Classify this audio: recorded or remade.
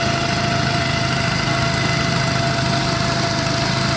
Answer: recorded